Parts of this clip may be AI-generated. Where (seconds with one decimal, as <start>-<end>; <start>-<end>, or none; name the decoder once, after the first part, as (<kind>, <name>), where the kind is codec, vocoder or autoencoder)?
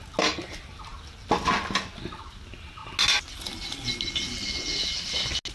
none